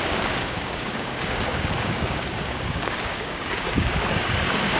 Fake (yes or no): yes